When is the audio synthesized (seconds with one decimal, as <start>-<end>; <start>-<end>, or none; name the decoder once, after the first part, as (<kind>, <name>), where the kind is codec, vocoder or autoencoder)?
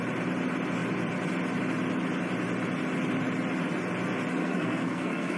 4.4-5.4 (codec, SNAC)